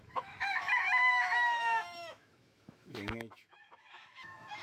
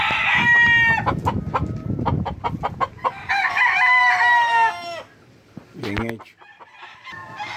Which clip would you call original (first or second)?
second